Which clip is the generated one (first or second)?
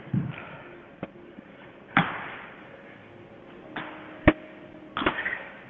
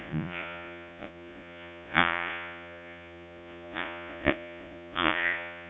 second